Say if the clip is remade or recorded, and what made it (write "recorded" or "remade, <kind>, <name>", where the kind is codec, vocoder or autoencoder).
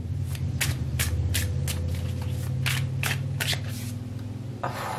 recorded